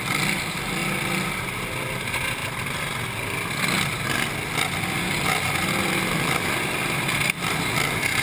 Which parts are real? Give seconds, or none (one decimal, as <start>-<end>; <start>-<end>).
0.8-1.4; 2.4-6.0